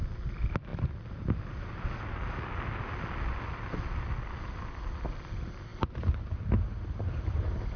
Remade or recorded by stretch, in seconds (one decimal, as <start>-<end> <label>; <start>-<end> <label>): 0.0-7.8 recorded